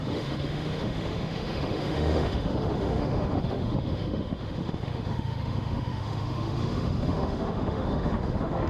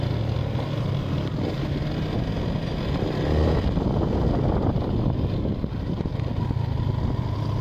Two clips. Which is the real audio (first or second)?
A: second